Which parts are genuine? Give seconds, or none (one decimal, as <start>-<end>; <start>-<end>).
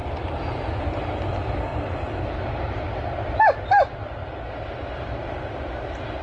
0.0-6.2